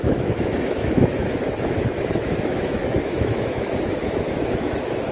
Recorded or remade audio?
remade